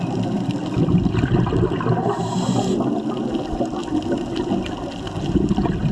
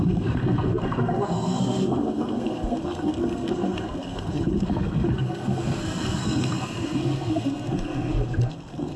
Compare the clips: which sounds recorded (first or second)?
first